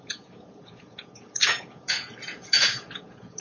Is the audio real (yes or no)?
no